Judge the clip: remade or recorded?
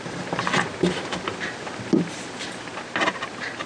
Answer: recorded